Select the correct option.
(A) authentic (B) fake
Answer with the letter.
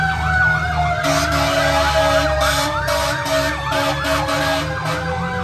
A